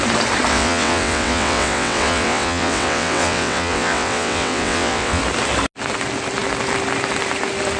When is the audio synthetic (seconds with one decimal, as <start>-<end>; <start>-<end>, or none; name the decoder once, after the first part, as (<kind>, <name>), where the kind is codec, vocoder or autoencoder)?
0.5-5.2 (vocoder, WaveNeXt)